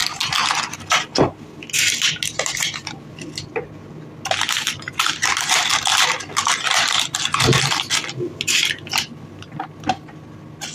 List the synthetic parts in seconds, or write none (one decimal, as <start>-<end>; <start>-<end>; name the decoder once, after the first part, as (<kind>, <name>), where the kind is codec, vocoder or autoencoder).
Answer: none